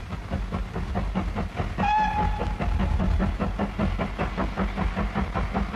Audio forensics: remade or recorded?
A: recorded